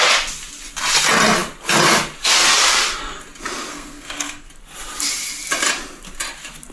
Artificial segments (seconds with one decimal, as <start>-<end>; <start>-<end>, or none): 3.7-4.5